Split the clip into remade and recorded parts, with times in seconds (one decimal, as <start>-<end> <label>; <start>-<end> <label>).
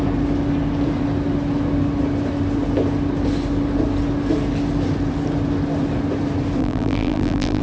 0.0-6.6 recorded; 6.6-7.6 remade